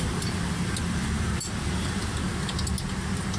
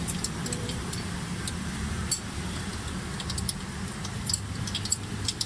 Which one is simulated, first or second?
second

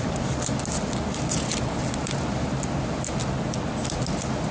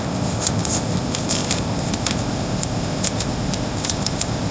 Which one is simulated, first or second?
second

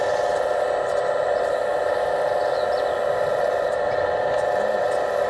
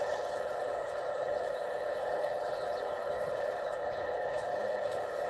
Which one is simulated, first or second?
second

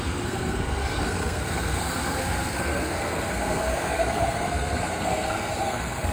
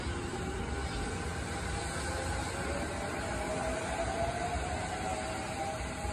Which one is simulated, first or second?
first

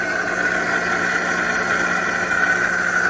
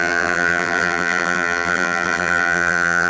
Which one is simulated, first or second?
second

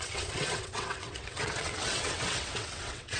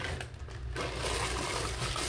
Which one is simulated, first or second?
first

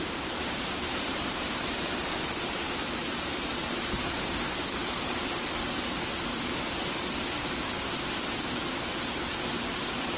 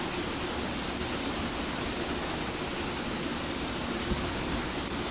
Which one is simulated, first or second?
first